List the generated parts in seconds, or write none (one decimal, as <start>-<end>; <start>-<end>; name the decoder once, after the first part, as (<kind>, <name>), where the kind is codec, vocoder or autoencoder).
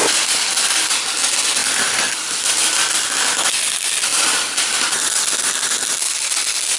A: 1.6-3.3 (vocoder, BigVGAN v2); 4.1-5.3